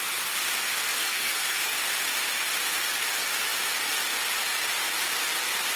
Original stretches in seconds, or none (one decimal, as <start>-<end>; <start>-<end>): 0.0-1.0; 1.6-5.8